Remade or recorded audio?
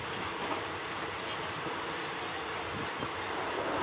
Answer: recorded